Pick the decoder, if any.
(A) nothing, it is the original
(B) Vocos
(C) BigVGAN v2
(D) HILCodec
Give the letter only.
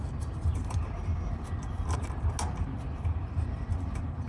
A